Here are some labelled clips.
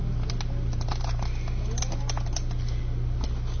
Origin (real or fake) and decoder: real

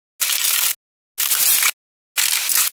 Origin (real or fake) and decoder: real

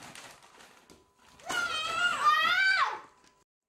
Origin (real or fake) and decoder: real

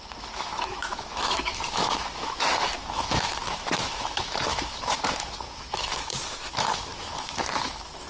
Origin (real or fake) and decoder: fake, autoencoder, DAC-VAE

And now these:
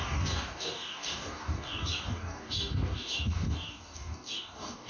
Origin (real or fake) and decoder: fake, codec, DAC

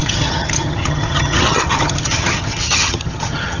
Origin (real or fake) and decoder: fake, vocoder, HiFi-GAN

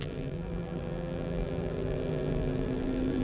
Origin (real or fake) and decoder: fake, vocoder, BigVGAN v2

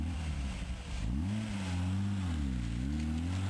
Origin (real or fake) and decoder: real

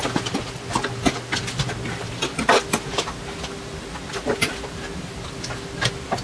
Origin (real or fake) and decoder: real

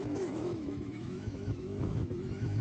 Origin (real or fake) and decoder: fake, autoencoder, DAC-VAE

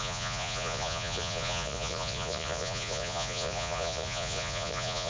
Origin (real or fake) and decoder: fake, vocoder, Vocos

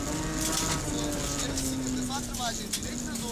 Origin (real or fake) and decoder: real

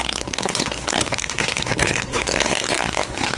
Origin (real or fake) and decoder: fake, codec, SNAC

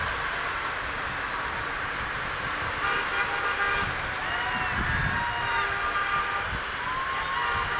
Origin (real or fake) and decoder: real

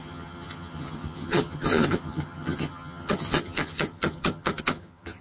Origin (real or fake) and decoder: fake, vocoder, HiFi-GAN